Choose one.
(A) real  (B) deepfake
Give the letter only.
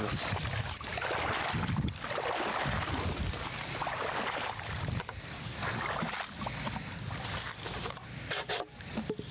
B